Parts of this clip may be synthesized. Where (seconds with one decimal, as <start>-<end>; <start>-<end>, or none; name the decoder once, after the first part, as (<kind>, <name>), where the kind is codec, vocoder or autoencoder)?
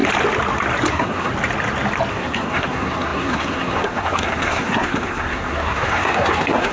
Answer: 0.9-1.3 (codec, SNAC); 2.1-6.7